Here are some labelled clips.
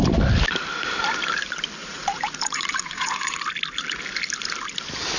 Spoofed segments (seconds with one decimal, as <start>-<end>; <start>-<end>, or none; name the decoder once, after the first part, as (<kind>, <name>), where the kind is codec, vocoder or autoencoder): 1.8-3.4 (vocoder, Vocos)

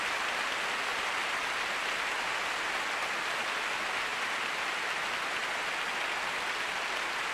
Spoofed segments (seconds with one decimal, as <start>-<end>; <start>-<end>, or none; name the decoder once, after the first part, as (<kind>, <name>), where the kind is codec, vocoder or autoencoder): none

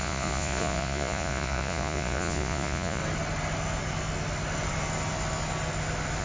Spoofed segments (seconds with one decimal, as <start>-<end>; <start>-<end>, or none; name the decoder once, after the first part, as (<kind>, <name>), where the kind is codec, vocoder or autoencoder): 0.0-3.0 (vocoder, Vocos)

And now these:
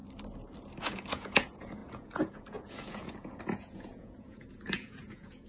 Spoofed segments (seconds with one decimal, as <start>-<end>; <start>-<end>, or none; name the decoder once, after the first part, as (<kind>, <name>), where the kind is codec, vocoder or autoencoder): 0.8-5.5 (vocoder, Vocos)

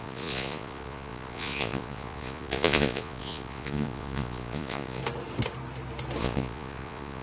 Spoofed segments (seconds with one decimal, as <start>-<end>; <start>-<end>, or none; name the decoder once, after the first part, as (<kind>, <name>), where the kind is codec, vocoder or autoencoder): 0.0-5.0 (vocoder, Vocos); 6.2-7.2

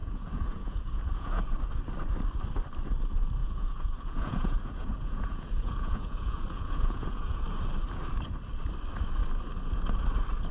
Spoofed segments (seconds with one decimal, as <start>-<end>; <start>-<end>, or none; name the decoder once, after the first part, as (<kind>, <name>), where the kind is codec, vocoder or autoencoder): 0.0-1.4 (vocoder, Vocos); 3.4-7.4